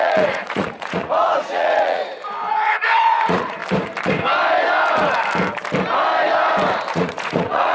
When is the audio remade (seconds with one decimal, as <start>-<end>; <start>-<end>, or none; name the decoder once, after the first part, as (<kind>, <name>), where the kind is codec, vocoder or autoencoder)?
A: 0.0-2.0 (vocoder, Vocos); 2.5-3.6; 6.9-7.7